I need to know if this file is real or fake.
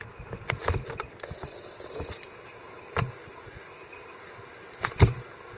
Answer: real